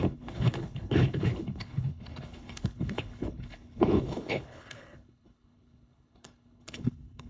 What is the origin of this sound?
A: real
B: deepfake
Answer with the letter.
B